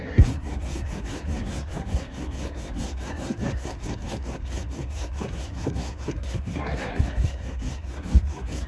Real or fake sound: fake